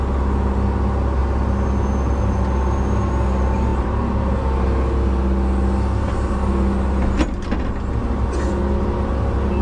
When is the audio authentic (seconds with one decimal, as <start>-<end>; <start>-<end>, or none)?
0.0-9.6

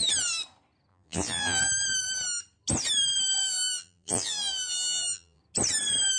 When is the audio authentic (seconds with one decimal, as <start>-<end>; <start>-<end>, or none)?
0.0-0.9; 1.6-3.4; 5.4-6.2